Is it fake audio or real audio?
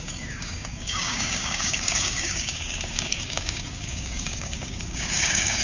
fake